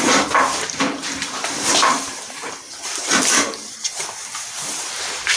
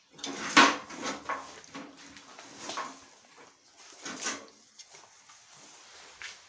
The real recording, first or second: second